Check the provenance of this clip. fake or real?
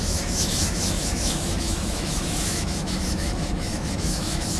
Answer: fake